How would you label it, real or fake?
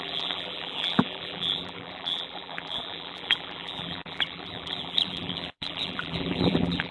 fake